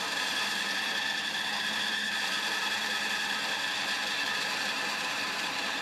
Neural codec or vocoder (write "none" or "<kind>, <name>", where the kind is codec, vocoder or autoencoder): vocoder, BigVGAN v2